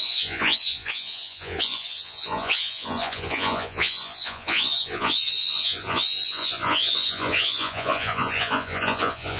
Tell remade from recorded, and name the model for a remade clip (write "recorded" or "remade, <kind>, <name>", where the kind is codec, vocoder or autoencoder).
remade, vocoder, Vocos